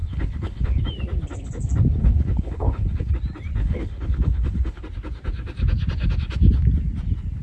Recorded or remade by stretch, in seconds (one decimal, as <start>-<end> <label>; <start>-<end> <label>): 0.0-0.8 remade; 0.8-2.0 recorded; 2.0-3.1 remade; 3.1-3.6 recorded; 3.6-4.8 remade; 4.8-7.4 recorded